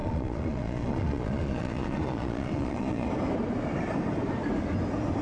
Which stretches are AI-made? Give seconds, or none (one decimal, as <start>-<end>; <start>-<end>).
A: 0.0-3.1